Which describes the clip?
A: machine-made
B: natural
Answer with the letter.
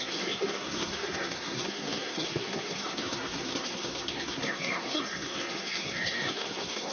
A